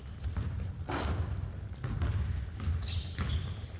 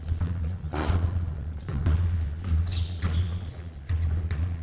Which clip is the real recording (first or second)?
first